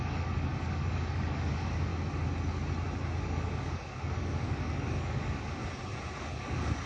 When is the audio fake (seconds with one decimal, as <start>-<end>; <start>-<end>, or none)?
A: 0.0-1.9; 3.2-5.6; 6.2-6.9